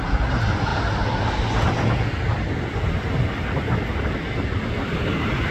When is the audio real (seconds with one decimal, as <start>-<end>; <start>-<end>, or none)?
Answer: 0.0-5.5

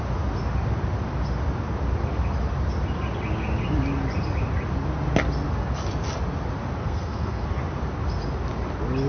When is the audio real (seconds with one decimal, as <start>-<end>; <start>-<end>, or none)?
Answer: 0.0-6.8; 7.6-9.1